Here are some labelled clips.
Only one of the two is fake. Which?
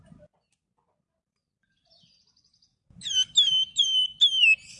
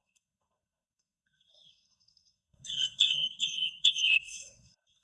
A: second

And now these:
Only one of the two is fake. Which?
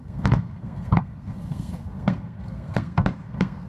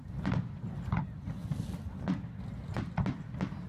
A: first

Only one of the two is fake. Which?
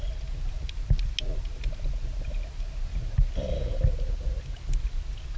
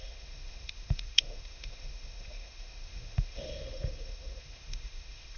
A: second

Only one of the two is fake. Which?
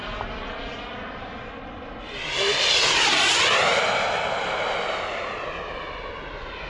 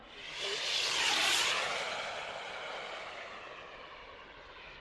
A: second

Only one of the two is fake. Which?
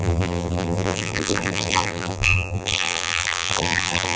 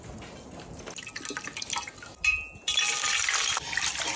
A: first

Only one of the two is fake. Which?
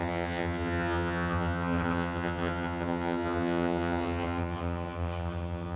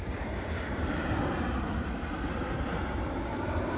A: first